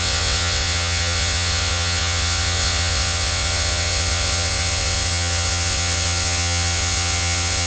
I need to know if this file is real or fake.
fake